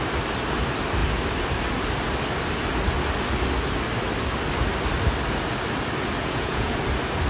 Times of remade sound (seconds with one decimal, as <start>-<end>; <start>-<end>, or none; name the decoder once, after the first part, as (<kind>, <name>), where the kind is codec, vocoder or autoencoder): 6.2-6.8 (vocoder, Vocos)